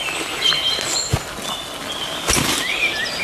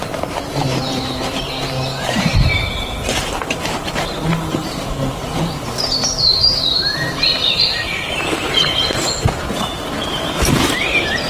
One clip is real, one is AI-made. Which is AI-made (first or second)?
second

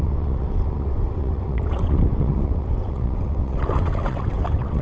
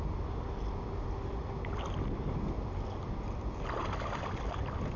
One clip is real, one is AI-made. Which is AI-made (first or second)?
first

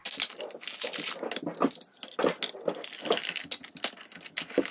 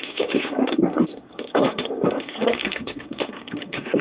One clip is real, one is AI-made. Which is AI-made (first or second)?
second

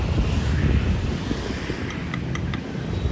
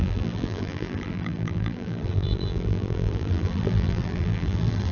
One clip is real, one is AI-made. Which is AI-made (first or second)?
second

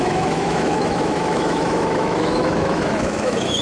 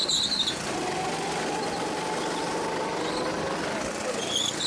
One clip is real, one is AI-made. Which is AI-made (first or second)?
first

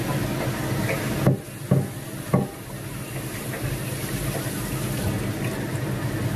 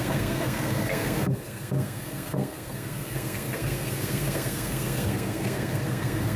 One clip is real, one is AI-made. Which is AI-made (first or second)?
second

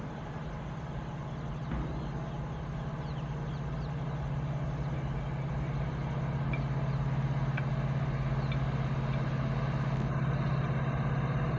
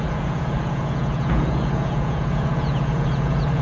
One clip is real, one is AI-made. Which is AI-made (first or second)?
second